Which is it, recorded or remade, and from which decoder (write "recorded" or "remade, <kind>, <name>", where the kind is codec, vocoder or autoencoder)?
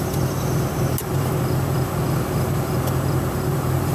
recorded